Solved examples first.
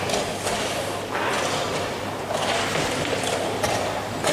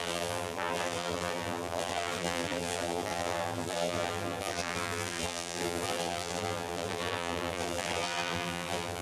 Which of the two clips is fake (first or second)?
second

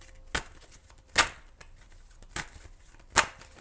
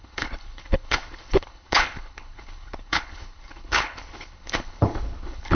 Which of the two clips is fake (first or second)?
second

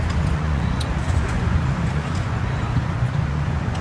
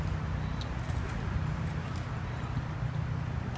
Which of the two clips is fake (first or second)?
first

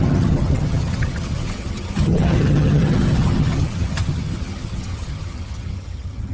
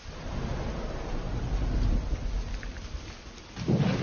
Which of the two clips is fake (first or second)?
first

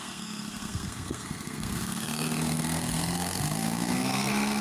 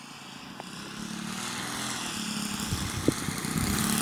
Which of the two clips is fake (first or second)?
first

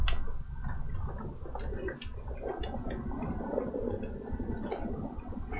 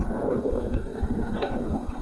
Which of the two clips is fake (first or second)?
second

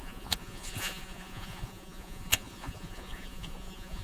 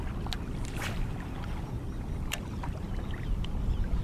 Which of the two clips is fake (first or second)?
first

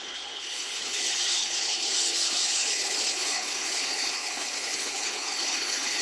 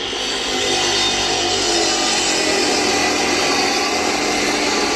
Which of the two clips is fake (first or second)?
first